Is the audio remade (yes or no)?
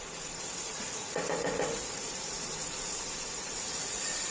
yes